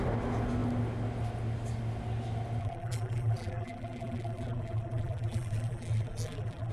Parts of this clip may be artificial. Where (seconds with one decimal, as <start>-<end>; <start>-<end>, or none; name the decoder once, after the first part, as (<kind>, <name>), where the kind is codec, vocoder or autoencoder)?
2.6-6.7 (vocoder, BigVGAN v2)